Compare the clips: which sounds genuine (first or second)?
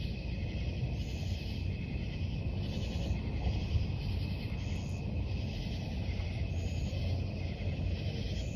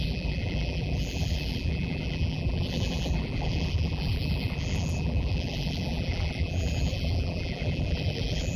first